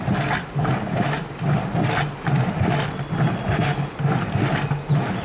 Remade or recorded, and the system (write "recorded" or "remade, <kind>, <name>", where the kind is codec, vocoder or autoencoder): recorded